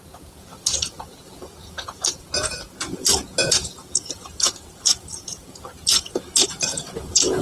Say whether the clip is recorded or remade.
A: remade